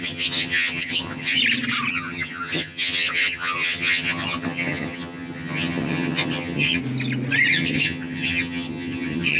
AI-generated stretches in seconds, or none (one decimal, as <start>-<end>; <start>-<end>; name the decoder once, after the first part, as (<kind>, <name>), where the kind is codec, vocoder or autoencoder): 0.0-1.4 (vocoder, HiFi-GAN); 1.9-6.8; 7.5-9.4